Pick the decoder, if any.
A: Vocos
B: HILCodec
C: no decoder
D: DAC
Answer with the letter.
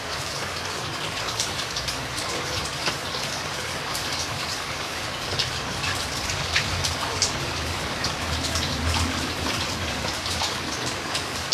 D